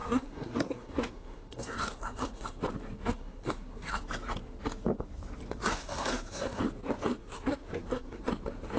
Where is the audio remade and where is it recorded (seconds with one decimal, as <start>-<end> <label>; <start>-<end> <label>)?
0.0-2.6 remade; 2.6-3.0 recorded; 3.0-4.0 remade; 4.0-5.6 recorded; 5.6-6.6 remade; 6.6-7.2 recorded; 7.2-8.3 remade; 8.3-8.8 recorded